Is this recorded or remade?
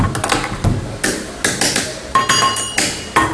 recorded